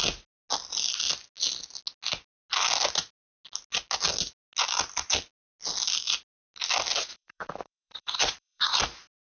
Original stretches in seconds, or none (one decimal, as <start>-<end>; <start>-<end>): 0.0-7.1; 8.8-9.4